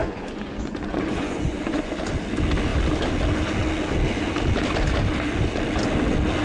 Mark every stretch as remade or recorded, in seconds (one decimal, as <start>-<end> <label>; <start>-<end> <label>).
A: 0.0-1.9 remade; 1.9-6.4 recorded